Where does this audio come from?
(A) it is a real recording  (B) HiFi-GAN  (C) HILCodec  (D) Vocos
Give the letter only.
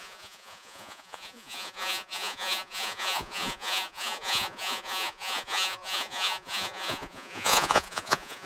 D